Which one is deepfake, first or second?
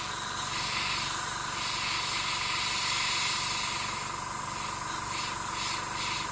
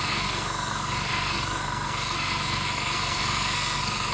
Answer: second